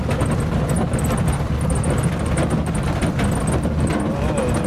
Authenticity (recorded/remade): recorded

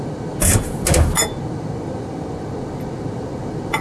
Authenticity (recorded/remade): recorded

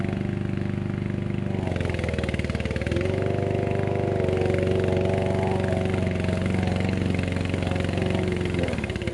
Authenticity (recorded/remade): recorded